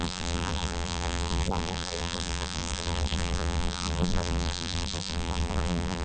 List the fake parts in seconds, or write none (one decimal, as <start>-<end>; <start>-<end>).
0.0-6.0